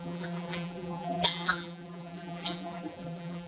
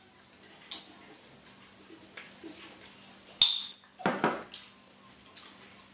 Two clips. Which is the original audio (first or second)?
second